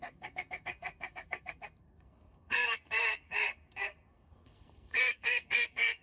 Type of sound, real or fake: fake